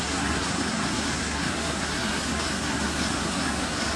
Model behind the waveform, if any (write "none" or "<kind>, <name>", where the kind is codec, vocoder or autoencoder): codec, SNAC